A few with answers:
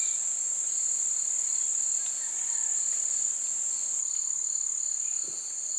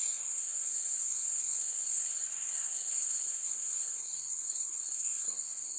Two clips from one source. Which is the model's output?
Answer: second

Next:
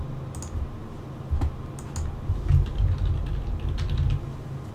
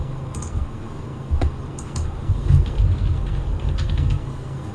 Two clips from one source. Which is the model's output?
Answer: second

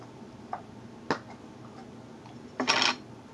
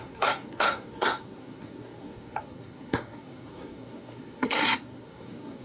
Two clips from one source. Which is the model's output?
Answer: second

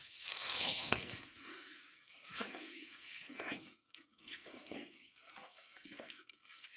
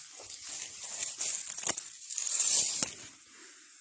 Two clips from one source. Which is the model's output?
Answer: first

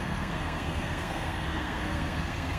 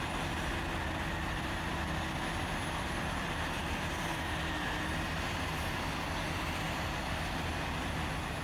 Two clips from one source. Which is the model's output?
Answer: first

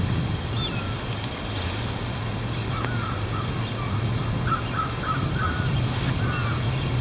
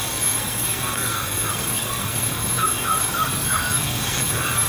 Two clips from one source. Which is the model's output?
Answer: second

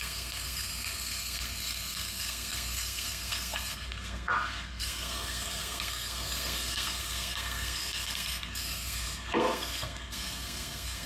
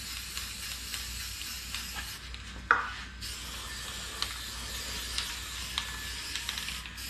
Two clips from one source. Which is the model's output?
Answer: first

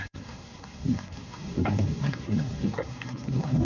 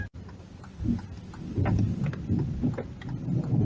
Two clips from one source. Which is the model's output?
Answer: first